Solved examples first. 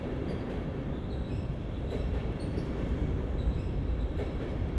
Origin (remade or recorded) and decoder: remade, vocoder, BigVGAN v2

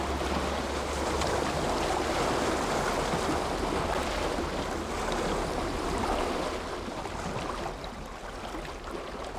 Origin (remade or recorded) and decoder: recorded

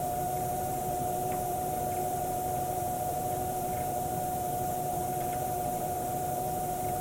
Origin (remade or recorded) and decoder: remade, vocoder, BigVGAN v2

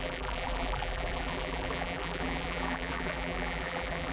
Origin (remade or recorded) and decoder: remade, vocoder, BigVGAN v2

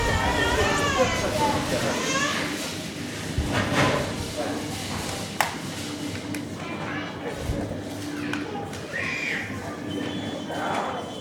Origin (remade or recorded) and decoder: recorded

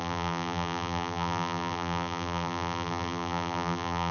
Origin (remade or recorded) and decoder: remade, vocoder, BigVGAN v2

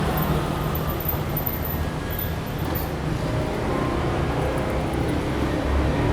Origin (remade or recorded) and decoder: recorded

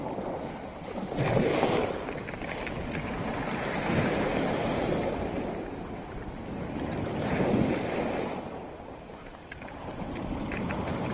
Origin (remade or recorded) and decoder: remade, vocoder, BigVGAN v2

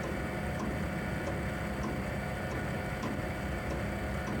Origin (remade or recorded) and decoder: recorded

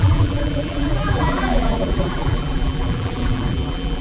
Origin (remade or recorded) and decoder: remade, vocoder, BigVGAN v2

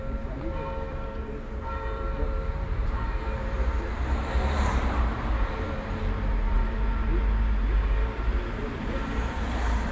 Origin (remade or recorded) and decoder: remade, vocoder, BigVGAN v2